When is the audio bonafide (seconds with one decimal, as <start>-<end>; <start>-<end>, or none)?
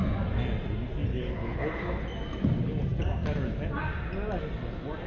0.0-1.1; 2.0-5.1